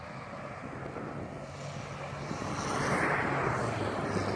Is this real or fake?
real